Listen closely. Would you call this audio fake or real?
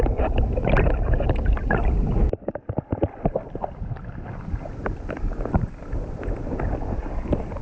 real